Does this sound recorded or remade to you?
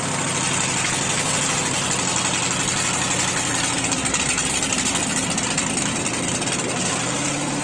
recorded